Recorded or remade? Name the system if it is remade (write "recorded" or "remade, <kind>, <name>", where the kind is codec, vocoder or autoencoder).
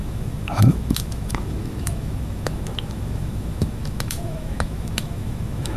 remade, autoencoder, DAC-VAE